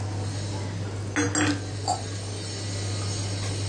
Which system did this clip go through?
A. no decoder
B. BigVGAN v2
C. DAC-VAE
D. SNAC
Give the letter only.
A